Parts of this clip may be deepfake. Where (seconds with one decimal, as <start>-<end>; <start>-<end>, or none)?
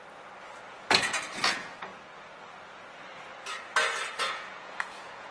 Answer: 0.7-1.9; 4.1-5.3